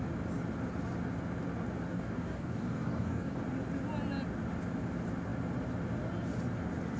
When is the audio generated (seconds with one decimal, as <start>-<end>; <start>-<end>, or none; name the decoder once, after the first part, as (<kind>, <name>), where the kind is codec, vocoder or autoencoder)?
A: 1.9-3.4 (codec, DAC)